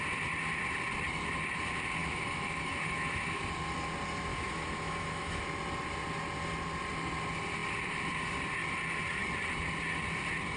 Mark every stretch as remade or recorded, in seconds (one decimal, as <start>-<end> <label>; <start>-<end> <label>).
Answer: 0.0-2.0 recorded; 2.0-3.4 remade; 3.4-4.3 recorded; 4.3-5.4 remade; 5.4-10.6 recorded